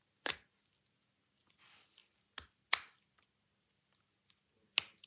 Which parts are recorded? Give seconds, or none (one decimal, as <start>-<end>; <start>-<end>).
0.0-5.1